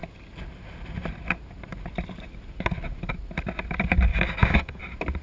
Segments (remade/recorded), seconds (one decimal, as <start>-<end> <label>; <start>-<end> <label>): 0.0-4.1 recorded; 4.1-4.8 remade; 4.8-5.2 recorded